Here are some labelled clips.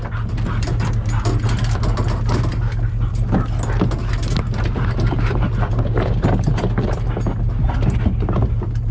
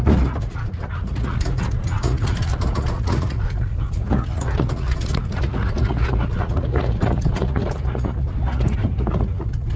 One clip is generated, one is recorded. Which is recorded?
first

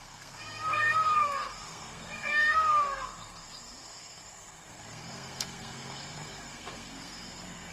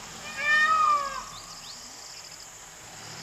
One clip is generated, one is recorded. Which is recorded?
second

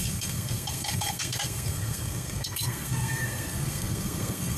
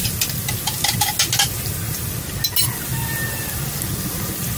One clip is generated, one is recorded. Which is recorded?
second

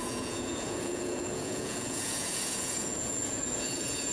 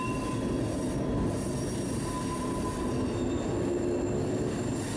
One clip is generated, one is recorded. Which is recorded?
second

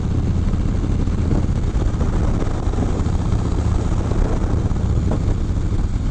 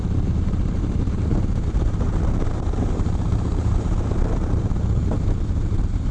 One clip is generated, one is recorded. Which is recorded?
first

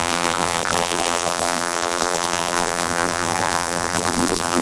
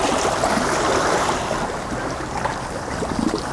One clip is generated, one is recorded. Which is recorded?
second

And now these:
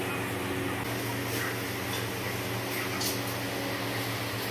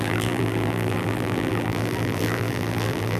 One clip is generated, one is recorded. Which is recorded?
first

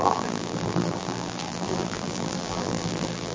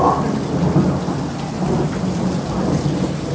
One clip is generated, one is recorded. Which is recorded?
second